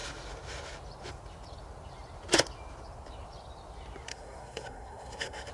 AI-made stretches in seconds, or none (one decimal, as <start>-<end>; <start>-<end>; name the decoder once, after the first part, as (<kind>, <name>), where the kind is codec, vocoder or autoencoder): 4.1-5.5 (codec, SNAC)